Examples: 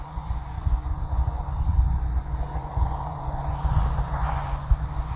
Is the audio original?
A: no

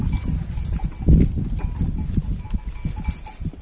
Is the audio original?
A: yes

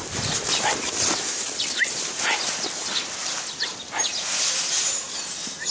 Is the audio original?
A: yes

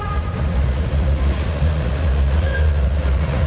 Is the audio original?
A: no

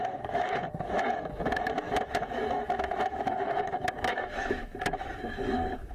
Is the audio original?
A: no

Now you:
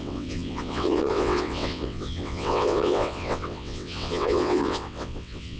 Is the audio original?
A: no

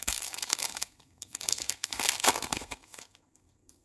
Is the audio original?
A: no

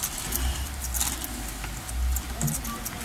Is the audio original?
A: yes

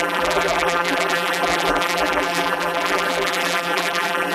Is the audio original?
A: no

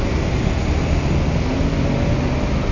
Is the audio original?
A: yes